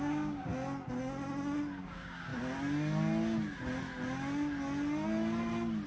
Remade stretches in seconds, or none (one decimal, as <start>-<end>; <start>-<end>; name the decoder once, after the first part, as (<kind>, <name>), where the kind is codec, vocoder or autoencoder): 0.0-0.5 (codec, DAC); 1.8-2.3